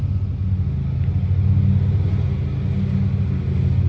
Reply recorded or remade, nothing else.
recorded